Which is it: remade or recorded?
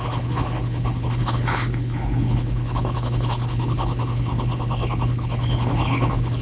remade